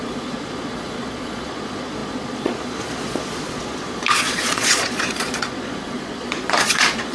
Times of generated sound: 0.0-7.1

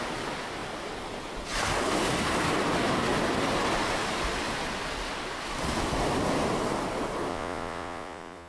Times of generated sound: 7.3-8.5

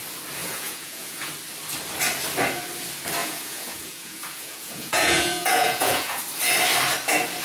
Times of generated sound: 0.4-1.3; 3.2-6.2

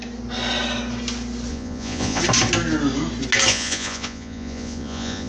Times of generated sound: 1.5-2.2; 3.5-5.3